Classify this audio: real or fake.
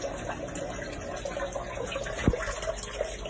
real